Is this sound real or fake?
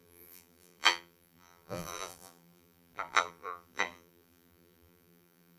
fake